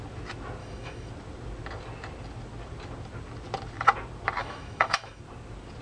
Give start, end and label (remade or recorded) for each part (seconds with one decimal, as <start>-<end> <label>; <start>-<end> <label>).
0.0-0.6 recorded; 0.6-1.1 remade; 1.1-4.4 recorded; 4.4-5.2 remade; 5.2-5.8 recorded

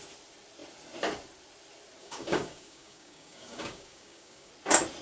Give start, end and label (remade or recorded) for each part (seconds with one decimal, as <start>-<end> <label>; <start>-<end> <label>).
0.0-2.0 recorded; 2.0-4.5 remade; 4.5-5.0 recorded